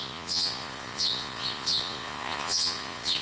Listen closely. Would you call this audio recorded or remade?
remade